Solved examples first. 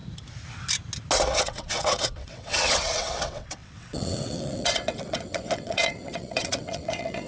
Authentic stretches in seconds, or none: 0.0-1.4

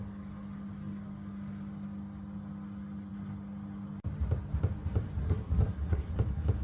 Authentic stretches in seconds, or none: 0.0-5.2; 6.1-6.6

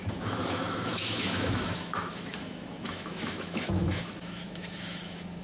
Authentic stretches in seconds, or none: none

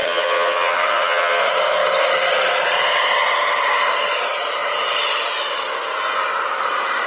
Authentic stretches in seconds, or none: 1.4-7.1

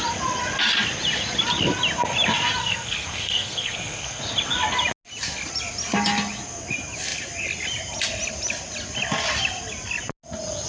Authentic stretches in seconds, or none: 0.0-2.6; 4.2-10.7

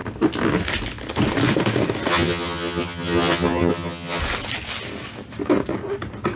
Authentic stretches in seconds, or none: 0.0-2.1; 4.2-6.4

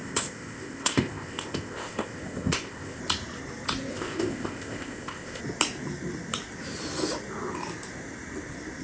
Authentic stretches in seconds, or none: 3.0-3.9; 5.4-8.8